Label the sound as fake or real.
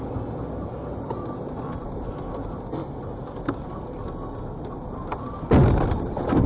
real